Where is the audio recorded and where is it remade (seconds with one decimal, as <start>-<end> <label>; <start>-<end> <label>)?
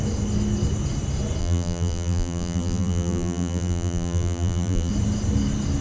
0.0-1.4 recorded; 1.4-4.9 remade; 4.9-5.8 recorded